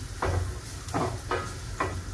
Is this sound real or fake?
real